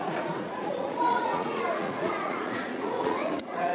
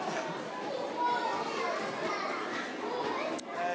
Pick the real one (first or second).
second